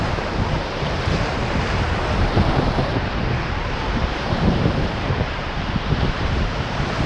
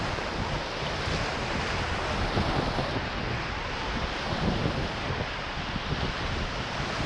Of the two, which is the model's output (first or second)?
first